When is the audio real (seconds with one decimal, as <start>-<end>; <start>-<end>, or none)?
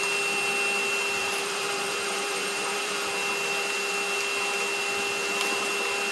0.0-1.2; 3.1-6.1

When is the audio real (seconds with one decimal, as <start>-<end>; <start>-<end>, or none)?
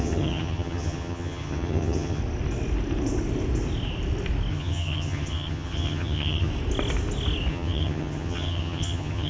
2.2-4.5; 6.5-7.5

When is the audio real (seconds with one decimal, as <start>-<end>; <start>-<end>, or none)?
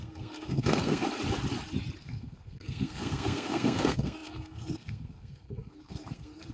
1.0-2.0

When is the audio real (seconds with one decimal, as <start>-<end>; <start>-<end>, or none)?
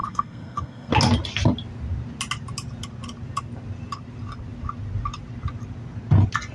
0.9-6.5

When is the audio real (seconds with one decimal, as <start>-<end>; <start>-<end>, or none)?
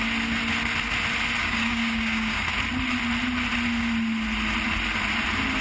0.0-1.4; 2.4-5.6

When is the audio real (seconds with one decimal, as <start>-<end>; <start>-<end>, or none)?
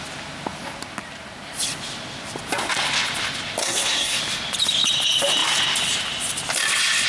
0.0-3.6; 4.2-7.1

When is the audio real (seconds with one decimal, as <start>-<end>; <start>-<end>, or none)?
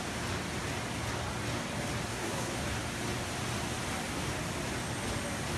0.0-2.1; 2.6-5.6